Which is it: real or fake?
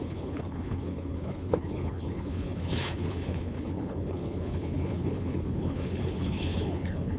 fake